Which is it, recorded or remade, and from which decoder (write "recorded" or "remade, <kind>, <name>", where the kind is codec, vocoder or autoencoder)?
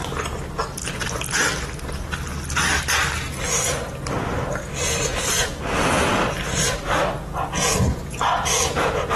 recorded